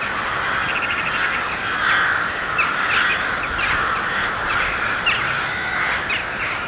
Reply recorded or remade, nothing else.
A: recorded